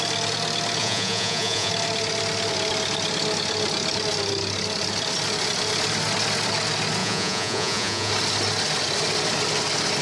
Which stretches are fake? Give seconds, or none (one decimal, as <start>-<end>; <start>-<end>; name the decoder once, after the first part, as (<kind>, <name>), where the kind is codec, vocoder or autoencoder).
0.8-1.7 (vocoder, Vocos); 7.0-8.1